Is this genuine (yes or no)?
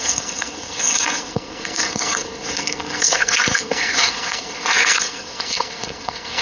no